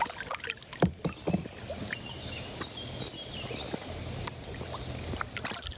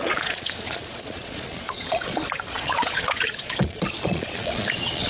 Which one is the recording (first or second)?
first